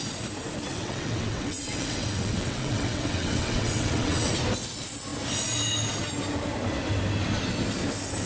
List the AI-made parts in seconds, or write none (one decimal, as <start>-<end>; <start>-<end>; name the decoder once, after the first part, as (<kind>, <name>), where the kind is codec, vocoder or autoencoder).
0.7-4.3 (vocoder, WaveNeXt)